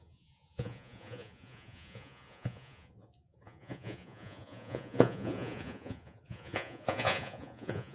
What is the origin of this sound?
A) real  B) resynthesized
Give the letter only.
B